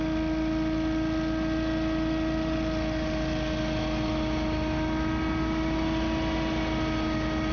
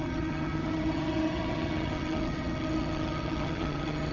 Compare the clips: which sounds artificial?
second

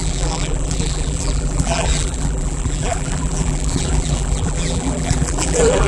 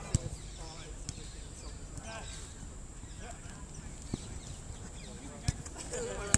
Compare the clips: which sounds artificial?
first